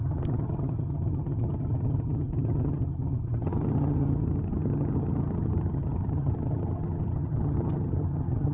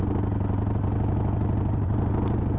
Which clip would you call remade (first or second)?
first